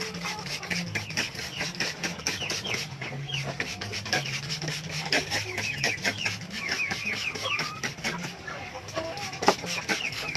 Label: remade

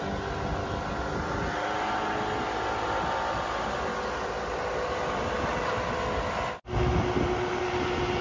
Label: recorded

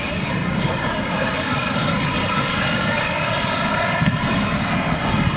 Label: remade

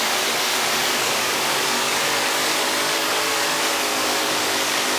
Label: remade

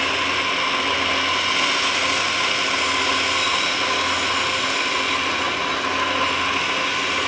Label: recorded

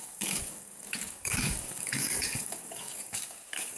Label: remade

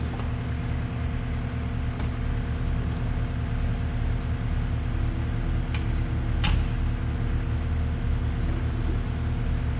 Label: recorded